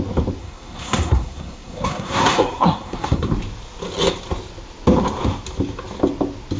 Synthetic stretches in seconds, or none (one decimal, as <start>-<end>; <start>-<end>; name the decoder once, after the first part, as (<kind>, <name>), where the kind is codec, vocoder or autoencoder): 0.4-3.3 (codec, SNAC)